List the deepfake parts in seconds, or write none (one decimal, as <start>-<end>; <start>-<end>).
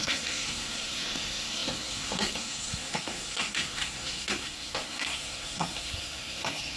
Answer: 0.0-6.8